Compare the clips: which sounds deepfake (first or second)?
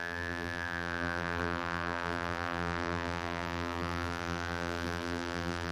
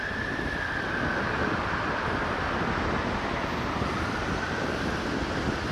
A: first